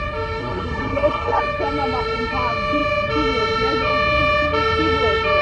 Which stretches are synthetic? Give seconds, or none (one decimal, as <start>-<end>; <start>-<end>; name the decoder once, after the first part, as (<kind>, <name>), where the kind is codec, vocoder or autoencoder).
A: 0.4-1.4 (codec, SNAC)